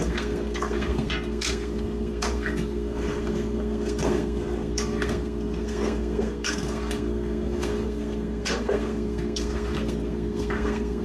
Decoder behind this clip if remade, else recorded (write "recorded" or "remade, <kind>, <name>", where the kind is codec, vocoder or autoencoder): remade, codec, SNAC